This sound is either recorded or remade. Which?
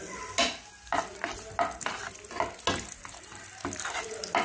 recorded